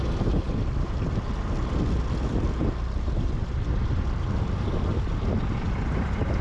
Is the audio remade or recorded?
recorded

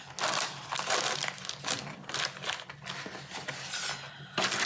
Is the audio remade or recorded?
recorded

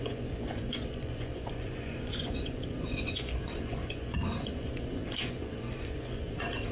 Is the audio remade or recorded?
remade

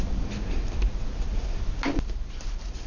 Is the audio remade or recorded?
recorded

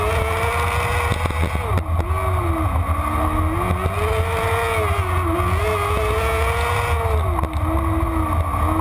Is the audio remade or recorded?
recorded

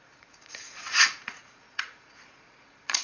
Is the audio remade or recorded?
remade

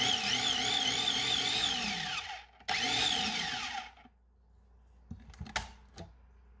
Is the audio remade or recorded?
recorded